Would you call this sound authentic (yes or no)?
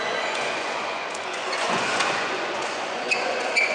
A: no